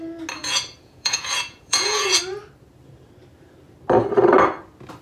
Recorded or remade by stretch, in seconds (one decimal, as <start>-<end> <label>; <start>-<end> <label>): 0.0-0.4 recorded; 0.4-2.2 remade; 2.2-5.0 recorded